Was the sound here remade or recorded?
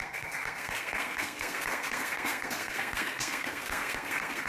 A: remade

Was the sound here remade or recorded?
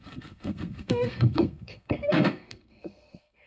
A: remade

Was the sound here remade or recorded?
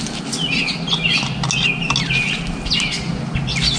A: recorded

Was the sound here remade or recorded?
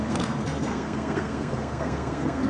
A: remade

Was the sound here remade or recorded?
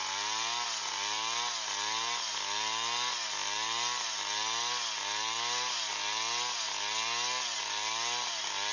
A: recorded